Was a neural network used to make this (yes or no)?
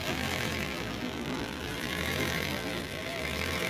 yes